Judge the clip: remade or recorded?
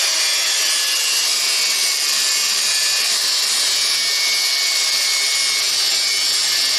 recorded